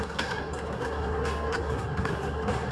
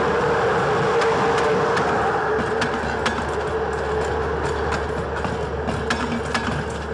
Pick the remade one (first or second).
first